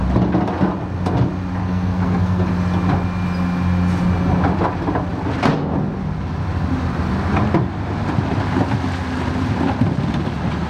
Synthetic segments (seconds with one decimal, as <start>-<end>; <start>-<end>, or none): 1.6-2.5